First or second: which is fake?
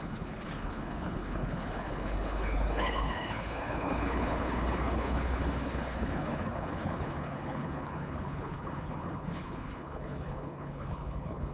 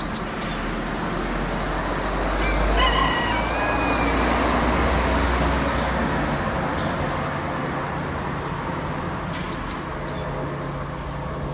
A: first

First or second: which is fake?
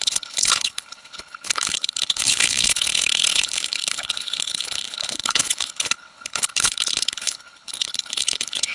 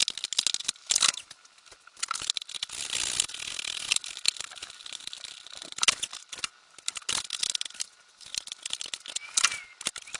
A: first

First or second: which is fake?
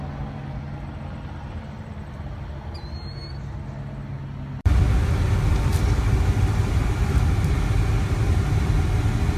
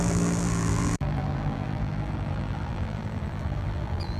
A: second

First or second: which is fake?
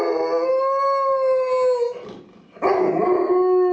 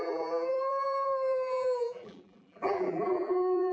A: second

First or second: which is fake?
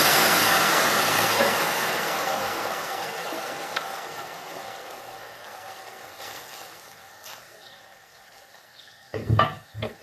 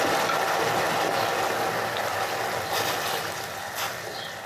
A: first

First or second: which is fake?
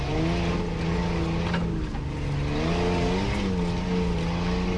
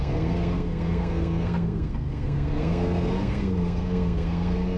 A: second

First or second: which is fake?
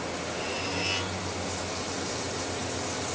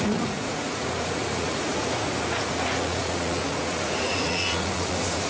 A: second